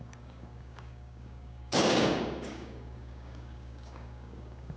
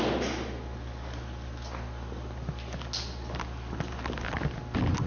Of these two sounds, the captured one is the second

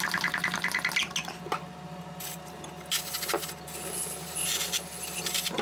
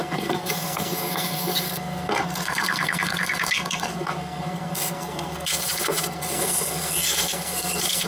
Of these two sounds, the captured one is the first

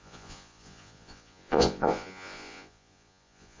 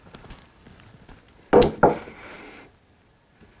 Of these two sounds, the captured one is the second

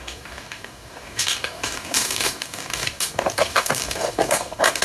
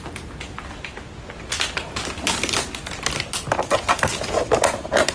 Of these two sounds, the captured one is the second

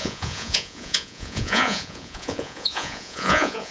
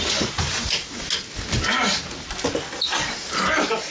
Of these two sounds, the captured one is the second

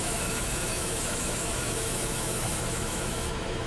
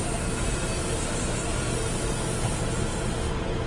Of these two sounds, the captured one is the second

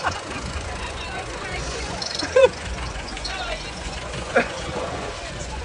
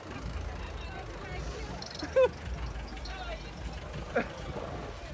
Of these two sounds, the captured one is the second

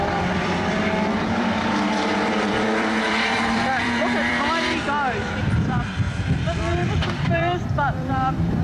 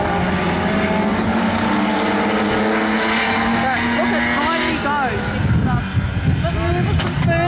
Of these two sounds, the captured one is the second